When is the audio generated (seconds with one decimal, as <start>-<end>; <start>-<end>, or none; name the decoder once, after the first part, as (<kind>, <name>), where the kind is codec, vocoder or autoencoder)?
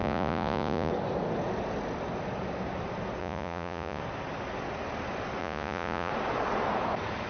0.0-0.9 (vocoder, Vocos); 3.2-4.0; 5.4-6.1